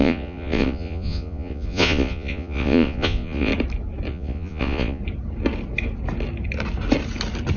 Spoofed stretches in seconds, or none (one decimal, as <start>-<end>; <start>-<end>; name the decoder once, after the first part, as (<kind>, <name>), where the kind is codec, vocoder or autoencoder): 0.0-3.5 (vocoder, Vocos); 4.1-5.0